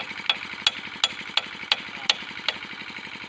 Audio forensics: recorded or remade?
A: recorded